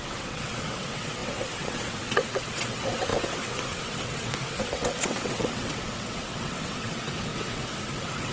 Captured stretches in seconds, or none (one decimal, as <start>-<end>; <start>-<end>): none